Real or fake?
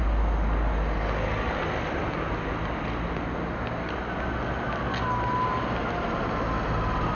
real